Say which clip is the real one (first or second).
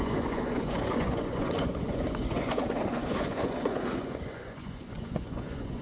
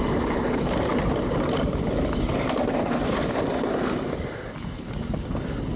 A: second